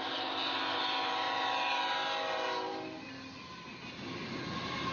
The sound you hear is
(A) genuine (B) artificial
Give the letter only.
A